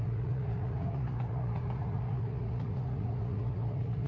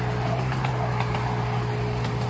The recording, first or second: second